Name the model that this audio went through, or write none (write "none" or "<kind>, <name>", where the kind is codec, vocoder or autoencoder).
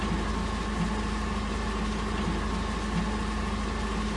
none